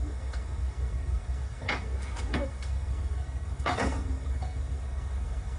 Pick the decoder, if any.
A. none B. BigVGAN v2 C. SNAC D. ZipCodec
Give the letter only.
C